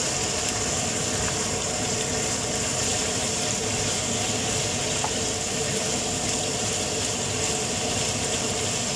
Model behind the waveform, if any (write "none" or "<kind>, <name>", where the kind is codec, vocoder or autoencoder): none